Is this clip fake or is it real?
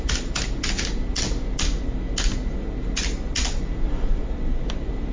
real